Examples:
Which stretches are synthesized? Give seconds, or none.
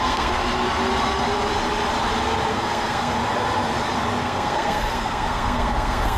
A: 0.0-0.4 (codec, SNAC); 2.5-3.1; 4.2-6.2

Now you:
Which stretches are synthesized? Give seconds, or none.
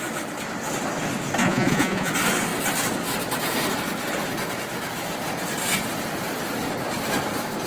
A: 1.4-2.1 (vocoder, Vocos)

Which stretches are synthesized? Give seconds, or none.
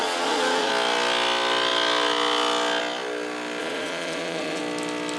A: 0.0-0.7 (vocoder, Vocos); 3.6-4.6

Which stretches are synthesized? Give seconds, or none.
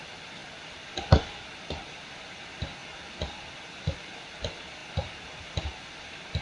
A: 0.0-0.4 (vocoder, BigVGAN v2); 1.7-2.8; 4.2-6.4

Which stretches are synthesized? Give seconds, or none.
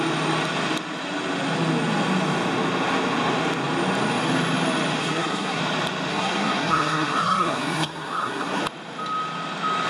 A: 5.0-5.6 (codec, SNAC); 6.1-8.6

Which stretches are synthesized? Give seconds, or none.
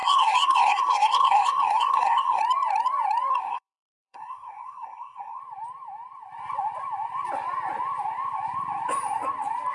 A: 0.0-2.4 (codec, SNAC); 3.3-5.4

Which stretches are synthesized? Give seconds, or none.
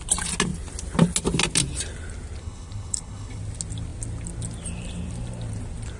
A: 2.4-3.4 (codec, HILCodec)